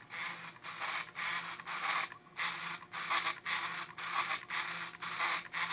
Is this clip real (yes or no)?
yes